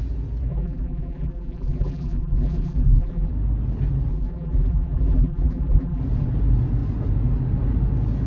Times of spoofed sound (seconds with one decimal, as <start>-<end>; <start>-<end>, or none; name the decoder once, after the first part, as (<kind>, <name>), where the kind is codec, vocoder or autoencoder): 0.5-3.3 (vocoder, BigVGAN v2); 4.1-6.0